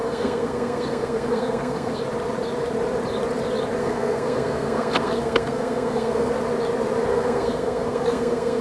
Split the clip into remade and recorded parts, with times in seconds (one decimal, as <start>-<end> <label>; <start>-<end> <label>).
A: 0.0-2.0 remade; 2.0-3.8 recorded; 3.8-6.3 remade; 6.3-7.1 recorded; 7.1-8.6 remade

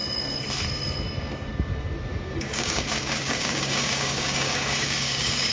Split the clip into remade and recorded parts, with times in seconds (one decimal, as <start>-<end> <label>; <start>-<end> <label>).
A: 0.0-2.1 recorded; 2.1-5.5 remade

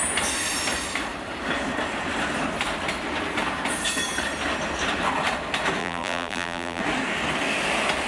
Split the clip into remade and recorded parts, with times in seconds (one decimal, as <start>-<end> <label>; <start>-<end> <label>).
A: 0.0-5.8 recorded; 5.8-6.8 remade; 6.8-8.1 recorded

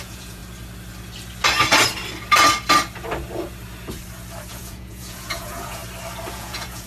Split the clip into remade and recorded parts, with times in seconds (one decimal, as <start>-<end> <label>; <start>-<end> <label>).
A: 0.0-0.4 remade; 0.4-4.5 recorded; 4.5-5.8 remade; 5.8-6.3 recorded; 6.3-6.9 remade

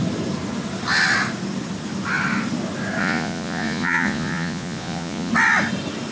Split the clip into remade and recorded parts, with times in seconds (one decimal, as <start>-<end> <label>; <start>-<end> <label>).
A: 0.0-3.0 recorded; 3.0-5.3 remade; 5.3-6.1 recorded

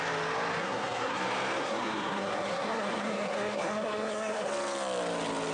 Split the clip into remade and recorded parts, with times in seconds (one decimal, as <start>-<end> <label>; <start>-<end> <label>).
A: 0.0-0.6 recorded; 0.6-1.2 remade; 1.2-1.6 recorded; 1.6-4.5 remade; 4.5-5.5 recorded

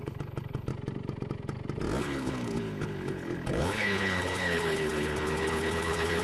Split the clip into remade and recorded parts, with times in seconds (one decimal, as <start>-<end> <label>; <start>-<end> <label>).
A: 0.0-0.7 remade; 0.7-2.0 recorded; 2.0-6.2 remade